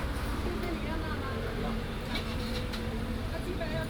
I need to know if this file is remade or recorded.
remade